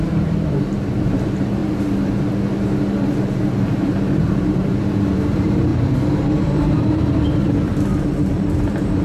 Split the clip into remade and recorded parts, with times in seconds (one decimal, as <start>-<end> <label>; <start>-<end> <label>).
0.0-1.6 remade; 1.6-3.5 recorded; 3.5-7.7 remade; 7.7-8.3 recorded; 8.3-9.0 remade